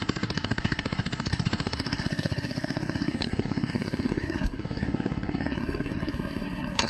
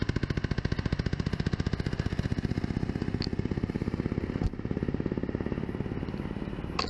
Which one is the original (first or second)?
second